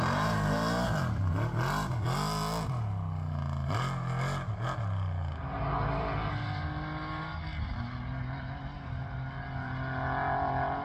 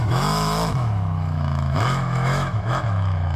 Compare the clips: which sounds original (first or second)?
first